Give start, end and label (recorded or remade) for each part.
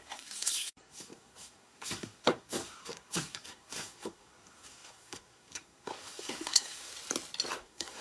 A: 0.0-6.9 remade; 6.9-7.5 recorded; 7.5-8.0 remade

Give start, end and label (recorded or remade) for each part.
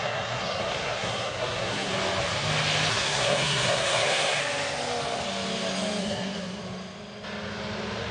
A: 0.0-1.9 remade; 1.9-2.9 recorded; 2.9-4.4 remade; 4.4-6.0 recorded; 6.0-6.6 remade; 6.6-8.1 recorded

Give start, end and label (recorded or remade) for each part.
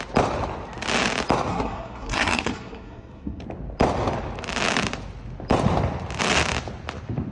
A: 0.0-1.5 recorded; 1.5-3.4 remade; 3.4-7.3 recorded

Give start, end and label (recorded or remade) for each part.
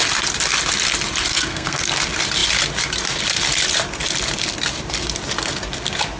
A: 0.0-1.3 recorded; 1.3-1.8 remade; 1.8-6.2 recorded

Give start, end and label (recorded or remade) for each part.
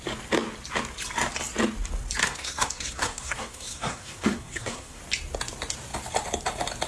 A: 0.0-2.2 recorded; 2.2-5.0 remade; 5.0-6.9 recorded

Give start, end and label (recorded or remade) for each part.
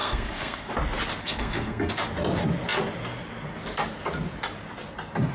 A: 0.0-0.7 remade; 0.7-1.2 recorded; 1.2-1.9 remade; 1.9-5.3 recorded